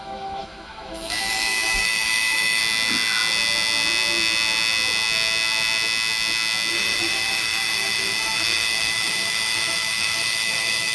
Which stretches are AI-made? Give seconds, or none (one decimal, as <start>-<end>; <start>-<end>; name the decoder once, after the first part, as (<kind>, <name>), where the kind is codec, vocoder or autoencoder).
0.0-2.6 (autoencoder, DAC-VAE); 6.7-10.9